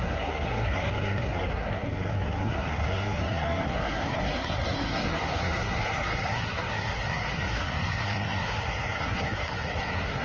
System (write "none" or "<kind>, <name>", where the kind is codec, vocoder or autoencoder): codec, SNAC